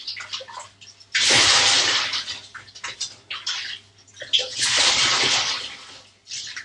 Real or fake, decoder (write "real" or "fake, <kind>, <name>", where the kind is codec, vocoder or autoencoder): real